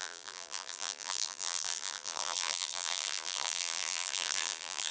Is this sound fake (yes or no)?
yes